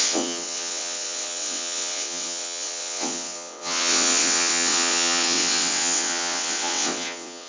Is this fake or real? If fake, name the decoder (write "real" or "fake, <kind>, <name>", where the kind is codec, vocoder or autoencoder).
fake, vocoder, WaveNeXt